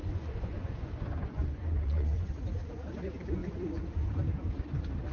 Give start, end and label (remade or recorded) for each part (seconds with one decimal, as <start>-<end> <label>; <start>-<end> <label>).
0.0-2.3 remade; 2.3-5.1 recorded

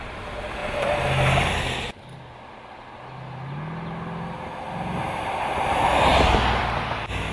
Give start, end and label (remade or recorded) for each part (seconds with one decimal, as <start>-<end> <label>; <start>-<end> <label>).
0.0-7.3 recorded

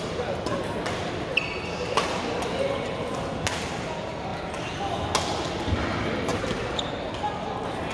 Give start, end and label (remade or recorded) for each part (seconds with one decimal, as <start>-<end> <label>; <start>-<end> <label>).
0.0-7.9 recorded